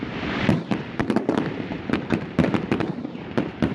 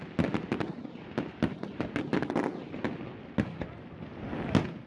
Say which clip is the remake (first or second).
first